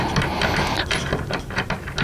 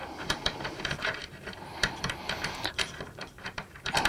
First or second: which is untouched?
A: first